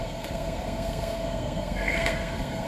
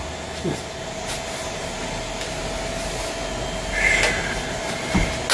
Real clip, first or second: second